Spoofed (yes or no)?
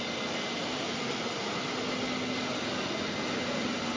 no